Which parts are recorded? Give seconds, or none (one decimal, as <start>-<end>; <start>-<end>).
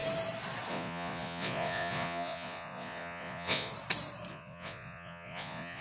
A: 0.0-0.7; 3.7-4.3